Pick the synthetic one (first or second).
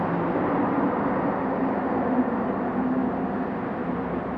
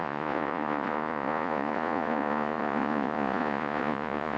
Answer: second